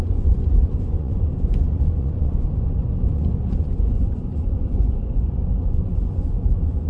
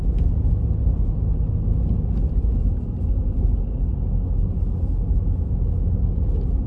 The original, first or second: second